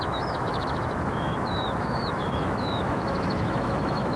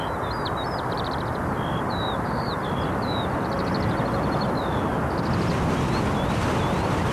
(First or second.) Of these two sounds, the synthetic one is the first